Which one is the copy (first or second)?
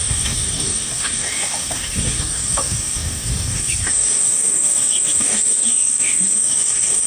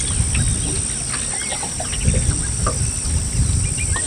first